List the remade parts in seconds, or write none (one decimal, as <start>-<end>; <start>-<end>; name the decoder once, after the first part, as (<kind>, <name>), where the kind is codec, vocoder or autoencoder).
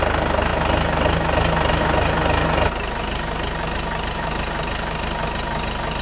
none